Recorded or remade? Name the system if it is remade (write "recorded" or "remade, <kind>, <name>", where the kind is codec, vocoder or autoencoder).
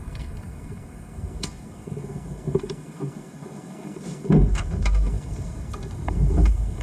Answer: remade, codec, SNAC